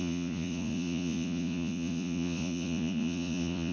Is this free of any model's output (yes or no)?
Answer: no